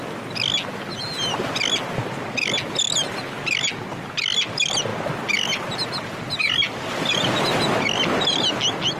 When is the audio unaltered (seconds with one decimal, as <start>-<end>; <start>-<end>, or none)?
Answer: 0.0-9.0